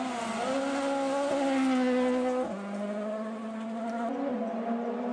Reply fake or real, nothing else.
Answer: real